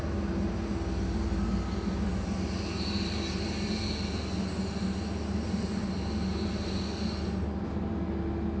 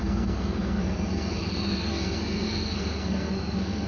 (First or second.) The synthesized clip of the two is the second